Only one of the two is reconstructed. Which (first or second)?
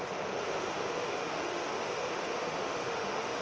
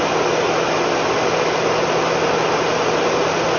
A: first